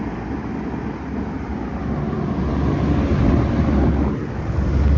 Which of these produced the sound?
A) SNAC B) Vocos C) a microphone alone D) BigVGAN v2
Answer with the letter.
C